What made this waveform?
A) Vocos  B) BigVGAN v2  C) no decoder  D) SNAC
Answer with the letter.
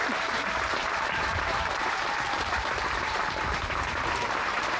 B